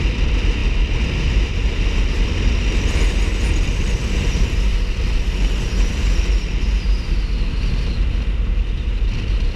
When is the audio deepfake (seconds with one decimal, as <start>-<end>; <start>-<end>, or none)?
none

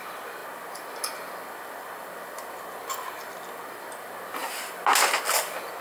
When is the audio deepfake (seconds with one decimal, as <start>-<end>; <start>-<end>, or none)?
none

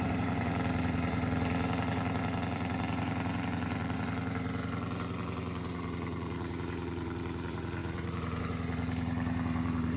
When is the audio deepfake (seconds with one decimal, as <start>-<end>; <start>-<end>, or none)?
0.0-10.0